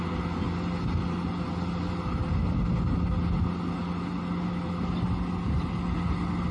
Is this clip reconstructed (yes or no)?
no